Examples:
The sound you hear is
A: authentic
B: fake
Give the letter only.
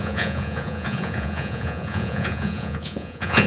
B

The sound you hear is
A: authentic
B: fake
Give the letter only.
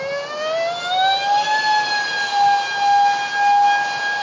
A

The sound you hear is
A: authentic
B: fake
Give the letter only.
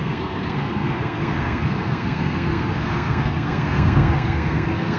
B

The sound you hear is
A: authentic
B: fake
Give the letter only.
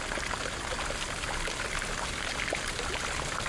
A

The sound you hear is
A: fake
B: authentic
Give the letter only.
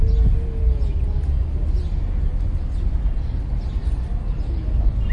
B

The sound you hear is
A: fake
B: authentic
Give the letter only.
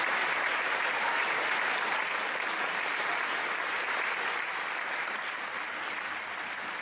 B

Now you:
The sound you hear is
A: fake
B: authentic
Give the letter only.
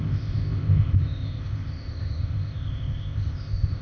A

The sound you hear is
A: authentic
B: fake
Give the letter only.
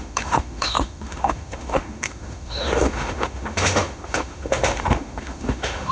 B